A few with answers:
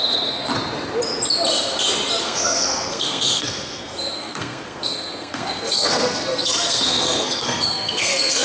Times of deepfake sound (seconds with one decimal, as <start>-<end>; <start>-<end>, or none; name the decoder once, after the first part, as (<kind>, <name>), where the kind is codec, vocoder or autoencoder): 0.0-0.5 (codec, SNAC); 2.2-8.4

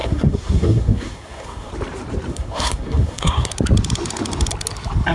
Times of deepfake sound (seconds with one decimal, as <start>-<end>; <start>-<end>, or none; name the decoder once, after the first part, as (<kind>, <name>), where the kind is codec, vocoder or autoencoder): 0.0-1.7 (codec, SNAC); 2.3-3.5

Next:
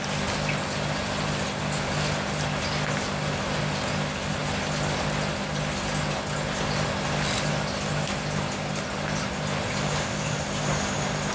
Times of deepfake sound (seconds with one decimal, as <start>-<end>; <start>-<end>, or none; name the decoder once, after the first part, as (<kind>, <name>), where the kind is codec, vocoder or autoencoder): none

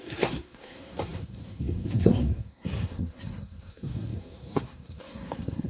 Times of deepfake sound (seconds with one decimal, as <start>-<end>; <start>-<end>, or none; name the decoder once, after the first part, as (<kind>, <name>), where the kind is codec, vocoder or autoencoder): 0.0-5.7 (codec, SNAC)

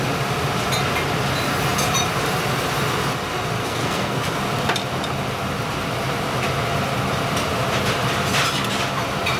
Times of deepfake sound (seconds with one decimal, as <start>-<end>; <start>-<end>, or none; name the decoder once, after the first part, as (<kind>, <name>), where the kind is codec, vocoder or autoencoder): 3.6-4.4 (codec, SNAC)

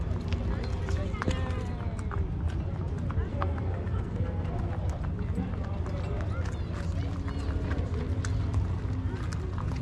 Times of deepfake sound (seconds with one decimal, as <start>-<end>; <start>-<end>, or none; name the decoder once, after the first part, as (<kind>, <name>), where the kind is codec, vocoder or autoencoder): 3.3-4.7 (codec, SNAC)

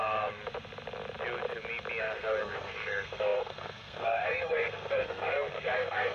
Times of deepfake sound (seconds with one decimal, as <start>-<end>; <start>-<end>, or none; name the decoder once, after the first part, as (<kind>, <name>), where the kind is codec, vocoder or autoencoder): 0.0-0.4 (codec, SNAC); 2.0-6.1

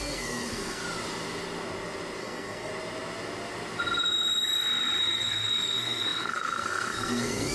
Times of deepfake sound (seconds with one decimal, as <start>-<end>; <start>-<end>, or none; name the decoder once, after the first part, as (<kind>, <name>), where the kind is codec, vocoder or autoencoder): 0.0-0.8 (codec, SNAC); 2.2-2.7; 5.0-7.5